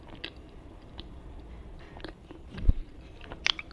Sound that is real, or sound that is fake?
fake